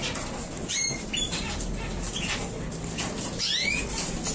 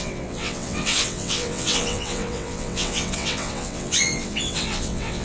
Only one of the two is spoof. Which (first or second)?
second